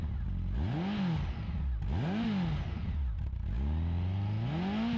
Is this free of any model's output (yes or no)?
yes